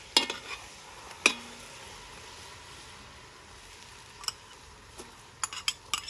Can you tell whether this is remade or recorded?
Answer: recorded